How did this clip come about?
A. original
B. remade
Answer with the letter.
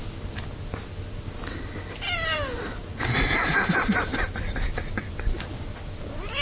A